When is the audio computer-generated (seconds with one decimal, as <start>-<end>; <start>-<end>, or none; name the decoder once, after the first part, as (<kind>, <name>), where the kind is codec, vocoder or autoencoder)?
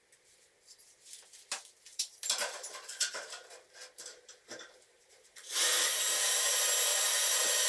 1.9-6.5 (vocoder, BigVGAN v2); 6.9-7.7